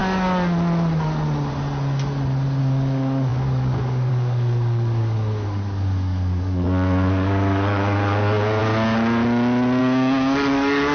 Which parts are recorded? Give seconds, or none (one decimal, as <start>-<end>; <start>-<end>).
0.0-2.6; 8.6-9.8